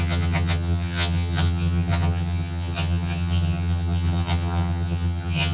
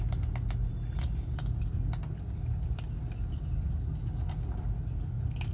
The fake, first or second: first